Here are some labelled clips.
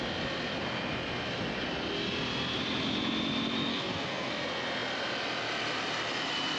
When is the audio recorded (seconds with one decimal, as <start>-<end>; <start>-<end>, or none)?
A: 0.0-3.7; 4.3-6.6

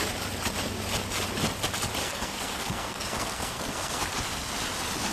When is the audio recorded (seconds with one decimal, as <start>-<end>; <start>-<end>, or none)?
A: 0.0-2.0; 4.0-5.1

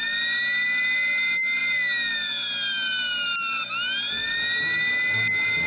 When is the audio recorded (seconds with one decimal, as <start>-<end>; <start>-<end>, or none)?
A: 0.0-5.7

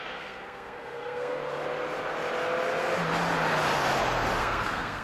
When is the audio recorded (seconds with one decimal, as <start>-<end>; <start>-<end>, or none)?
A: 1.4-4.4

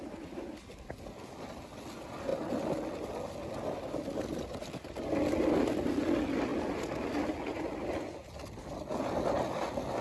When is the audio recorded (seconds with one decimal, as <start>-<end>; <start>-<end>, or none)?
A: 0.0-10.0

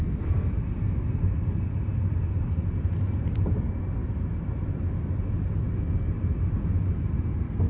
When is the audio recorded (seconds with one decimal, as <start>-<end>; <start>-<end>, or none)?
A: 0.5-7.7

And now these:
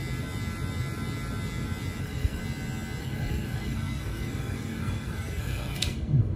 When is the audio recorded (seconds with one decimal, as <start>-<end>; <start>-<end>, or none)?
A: 0.0-2.0; 2.4-3.0